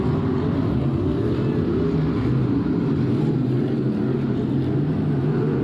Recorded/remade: recorded